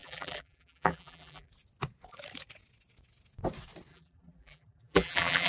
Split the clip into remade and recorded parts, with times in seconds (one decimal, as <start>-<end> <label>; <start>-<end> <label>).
0.0-1.5 remade; 1.5-3.9 recorded; 3.9-5.5 remade